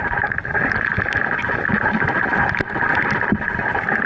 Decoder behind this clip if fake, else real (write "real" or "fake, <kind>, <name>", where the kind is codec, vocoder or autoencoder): real